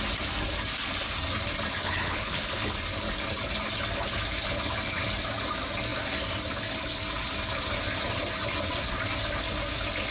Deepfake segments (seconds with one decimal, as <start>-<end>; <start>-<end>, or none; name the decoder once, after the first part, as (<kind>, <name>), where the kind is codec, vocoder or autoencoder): 1.8-2.4 (codec, HILCodec)